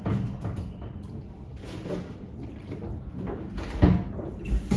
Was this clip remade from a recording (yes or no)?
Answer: no